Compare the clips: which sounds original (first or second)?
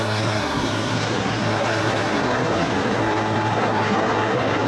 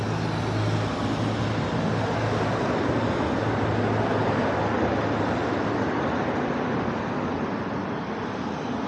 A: second